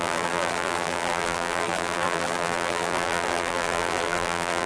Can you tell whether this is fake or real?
fake